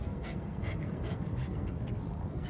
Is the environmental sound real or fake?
fake